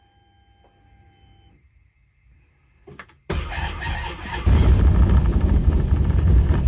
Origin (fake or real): real